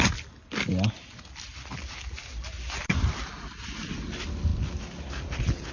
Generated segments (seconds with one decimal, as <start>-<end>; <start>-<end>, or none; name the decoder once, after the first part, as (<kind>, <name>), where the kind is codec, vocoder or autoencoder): none